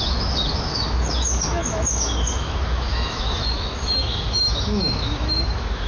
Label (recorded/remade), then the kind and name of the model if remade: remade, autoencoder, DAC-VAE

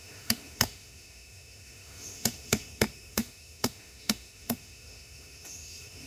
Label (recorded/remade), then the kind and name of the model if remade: remade, autoencoder, DAC-VAE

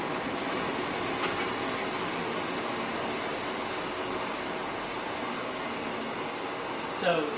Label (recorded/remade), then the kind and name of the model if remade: recorded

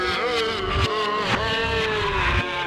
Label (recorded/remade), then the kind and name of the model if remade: recorded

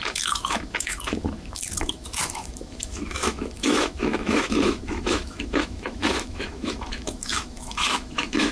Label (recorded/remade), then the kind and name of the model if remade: remade, autoencoder, DAC-VAE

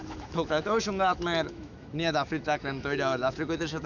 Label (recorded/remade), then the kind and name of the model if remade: remade, autoencoder, DAC-VAE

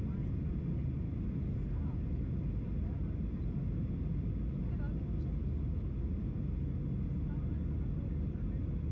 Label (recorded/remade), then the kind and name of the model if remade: recorded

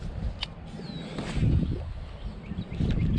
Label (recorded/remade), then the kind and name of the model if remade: recorded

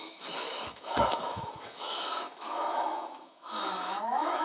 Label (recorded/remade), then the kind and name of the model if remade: remade, autoencoder, DAC-VAE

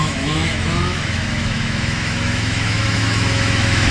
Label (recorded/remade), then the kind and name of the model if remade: remade, autoencoder, DAC-VAE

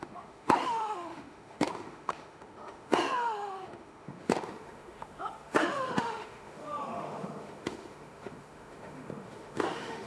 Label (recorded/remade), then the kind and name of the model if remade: remade, autoencoder, DAC-VAE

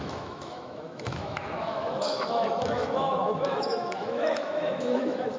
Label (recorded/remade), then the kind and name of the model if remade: remade, autoencoder, DAC-VAE